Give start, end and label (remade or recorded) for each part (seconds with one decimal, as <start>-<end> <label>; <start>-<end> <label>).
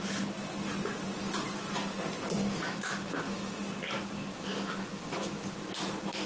0.0-2.4 recorded; 2.4-3.6 remade; 3.6-4.3 recorded; 4.3-5.6 remade; 5.6-6.3 recorded